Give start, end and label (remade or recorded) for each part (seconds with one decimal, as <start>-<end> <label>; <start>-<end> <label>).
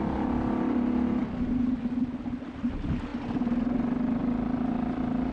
0.0-5.3 recorded